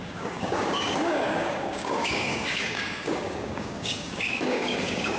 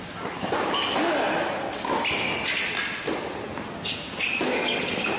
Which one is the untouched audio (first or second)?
second